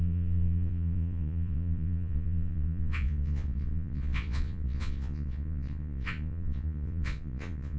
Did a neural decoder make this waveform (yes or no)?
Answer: yes